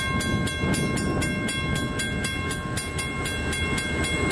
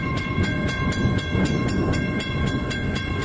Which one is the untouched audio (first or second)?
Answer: first